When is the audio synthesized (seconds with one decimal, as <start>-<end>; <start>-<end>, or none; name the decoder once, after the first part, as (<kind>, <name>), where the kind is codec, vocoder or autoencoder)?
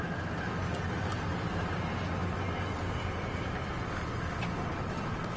none